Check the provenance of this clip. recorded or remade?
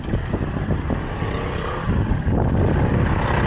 recorded